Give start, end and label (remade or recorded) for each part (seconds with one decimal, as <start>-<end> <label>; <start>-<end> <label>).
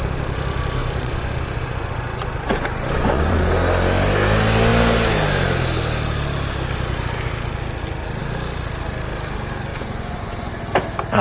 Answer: 0.0-0.8 recorded; 0.8-3.5 remade; 3.5-9.7 recorded; 9.7-10.6 remade; 10.6-11.2 recorded